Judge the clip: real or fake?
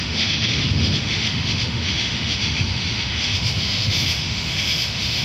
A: fake